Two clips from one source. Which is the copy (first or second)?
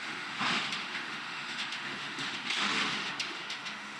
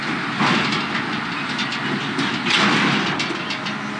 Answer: first